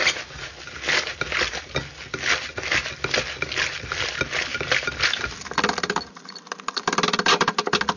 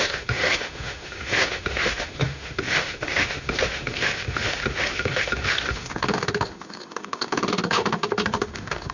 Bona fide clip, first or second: first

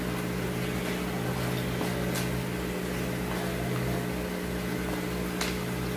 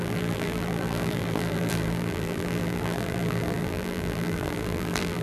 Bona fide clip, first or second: first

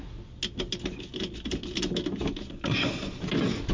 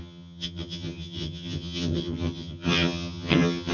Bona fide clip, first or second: first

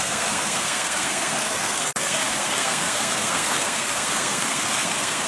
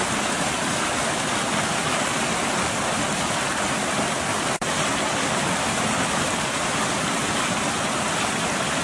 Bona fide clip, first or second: second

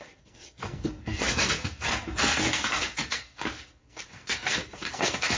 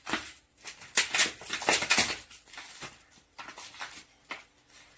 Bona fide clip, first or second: second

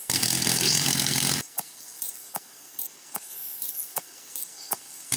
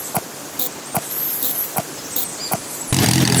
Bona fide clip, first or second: second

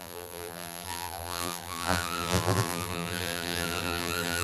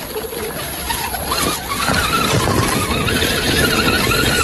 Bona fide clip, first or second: second